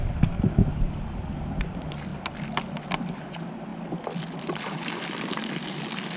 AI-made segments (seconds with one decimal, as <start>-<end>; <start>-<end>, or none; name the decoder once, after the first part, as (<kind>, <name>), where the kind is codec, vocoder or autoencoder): none